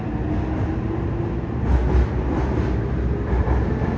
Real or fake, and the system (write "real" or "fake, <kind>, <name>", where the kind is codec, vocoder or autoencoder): real